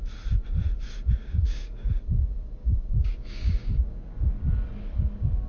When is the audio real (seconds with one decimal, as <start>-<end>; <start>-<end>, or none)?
0.0-1.2; 1.9-2.6; 3.7-5.5